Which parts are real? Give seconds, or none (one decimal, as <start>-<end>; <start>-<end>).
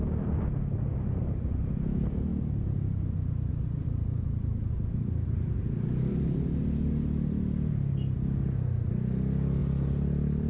0.0-10.5